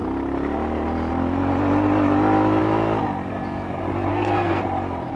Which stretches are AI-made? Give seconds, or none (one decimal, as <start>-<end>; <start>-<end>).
4.1-4.6